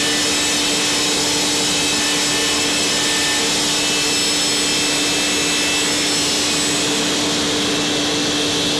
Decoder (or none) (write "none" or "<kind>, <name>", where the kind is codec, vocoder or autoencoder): none